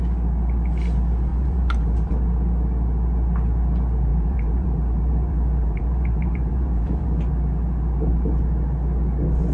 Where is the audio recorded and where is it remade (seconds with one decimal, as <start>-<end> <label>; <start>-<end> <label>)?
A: 0.0-1.3 recorded; 1.3-2.1 remade; 2.1-4.1 recorded; 4.1-7.3 remade; 7.3-9.5 recorded